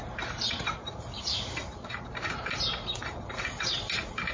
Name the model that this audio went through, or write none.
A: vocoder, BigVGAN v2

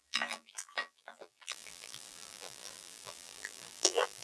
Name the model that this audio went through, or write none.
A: vocoder, BigVGAN v2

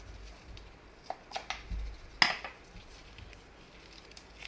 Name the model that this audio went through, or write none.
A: none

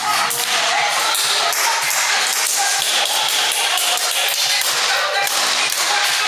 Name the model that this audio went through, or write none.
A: none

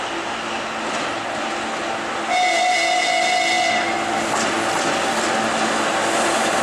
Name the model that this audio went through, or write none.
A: none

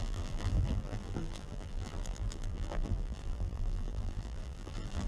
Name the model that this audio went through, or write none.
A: vocoder, BigVGAN v2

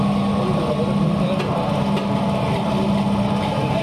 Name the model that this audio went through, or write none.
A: none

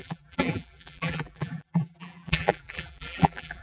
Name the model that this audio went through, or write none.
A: vocoder, BigVGAN v2